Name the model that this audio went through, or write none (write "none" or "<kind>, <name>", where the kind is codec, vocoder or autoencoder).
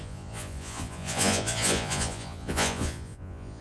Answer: vocoder, Vocos